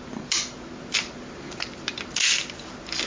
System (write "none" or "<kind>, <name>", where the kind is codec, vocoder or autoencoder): none